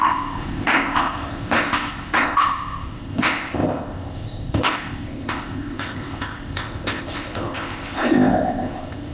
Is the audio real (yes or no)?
no